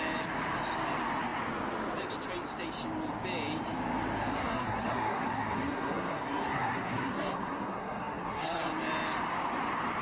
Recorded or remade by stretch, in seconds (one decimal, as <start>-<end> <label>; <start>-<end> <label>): 0.0-4.3 recorded; 4.3-8.7 remade; 8.7-10.0 recorded